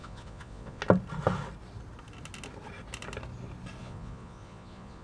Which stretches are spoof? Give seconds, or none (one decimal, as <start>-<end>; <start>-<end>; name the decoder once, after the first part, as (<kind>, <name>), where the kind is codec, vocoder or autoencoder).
0.0-0.8 (vocoder, Vocos); 3.8-5.0